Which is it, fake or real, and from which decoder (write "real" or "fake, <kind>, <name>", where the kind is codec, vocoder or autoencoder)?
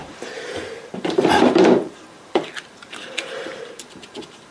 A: fake, vocoder, BigVGAN v2